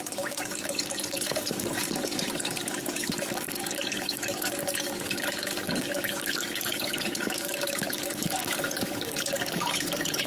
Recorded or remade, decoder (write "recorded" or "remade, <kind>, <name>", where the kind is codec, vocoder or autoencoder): remade, codec, DAC